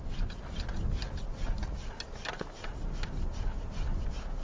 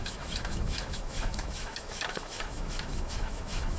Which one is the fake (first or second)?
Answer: second